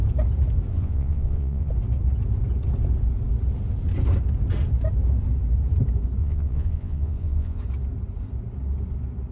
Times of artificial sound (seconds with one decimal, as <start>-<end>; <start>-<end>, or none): 0.7-1.7; 6.2-7.6